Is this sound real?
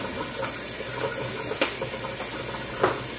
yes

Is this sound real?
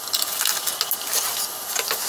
yes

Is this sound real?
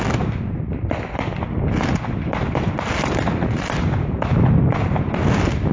yes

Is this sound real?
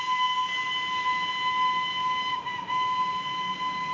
yes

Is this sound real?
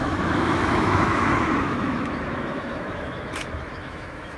no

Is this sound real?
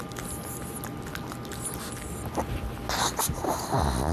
yes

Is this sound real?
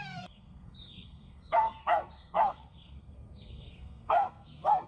no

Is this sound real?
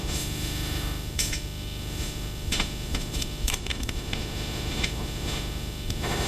no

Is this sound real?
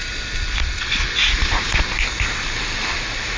yes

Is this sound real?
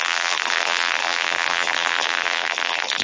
no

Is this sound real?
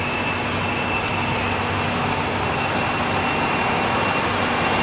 yes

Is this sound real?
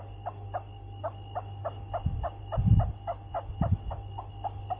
yes